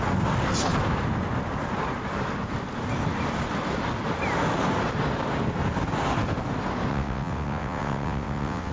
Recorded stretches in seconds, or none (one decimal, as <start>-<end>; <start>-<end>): 0.0-6.9